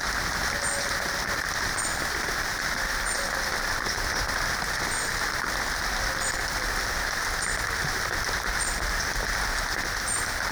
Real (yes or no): yes